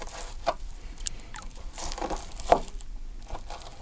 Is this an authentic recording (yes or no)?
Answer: no